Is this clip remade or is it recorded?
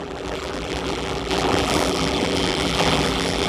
remade